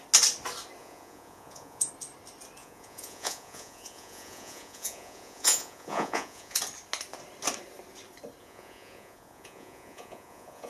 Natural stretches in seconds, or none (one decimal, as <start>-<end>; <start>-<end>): 0.0-0.8; 1.9-2.6; 6.6-8.4